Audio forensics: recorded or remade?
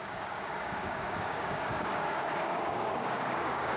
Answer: remade